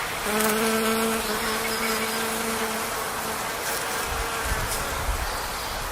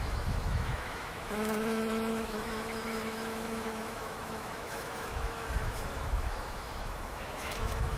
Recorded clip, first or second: first